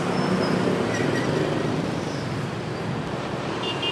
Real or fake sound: real